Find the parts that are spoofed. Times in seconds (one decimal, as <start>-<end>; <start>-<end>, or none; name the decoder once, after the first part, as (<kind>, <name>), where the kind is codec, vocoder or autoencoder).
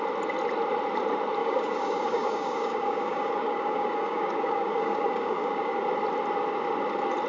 1.4-5.8 (codec, DAC)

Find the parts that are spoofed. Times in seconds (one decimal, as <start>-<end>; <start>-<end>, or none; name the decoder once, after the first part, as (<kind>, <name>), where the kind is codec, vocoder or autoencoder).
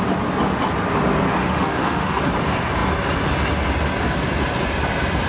1.4-2.2 (autoencoder, DAC-VAE)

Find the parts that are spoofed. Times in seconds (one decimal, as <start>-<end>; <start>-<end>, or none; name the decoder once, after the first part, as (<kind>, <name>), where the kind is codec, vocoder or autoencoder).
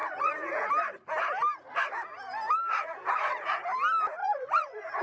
0.0-0.7 (vocoder, Vocos); 2.7-3.3; 4.2-5.0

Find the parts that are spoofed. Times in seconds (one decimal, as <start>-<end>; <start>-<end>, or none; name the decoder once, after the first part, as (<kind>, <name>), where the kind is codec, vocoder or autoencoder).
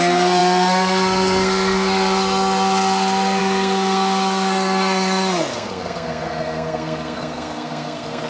0.0-8.3 (codec, SNAC)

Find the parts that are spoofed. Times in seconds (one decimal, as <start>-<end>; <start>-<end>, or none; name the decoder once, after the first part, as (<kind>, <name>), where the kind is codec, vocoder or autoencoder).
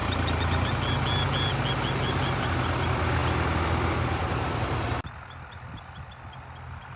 none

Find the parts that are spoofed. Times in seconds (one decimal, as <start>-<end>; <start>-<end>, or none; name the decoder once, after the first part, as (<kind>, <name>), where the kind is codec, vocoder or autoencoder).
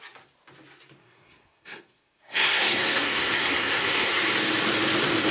1.0-4.2 (codec, SNAC)